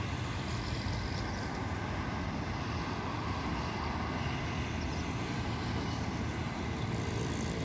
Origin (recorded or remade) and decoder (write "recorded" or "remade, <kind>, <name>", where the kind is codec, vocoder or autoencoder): recorded